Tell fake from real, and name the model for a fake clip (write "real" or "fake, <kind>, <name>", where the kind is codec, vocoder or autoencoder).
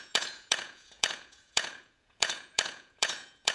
fake, vocoder, Vocos